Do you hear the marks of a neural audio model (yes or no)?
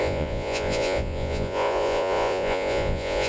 yes